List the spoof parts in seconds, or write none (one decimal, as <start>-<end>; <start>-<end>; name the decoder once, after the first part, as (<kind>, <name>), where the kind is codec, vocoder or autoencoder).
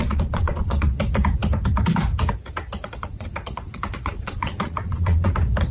0.0-0.9 (vocoder, Vocos); 2.8-5.3